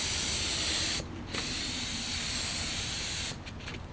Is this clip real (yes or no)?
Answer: yes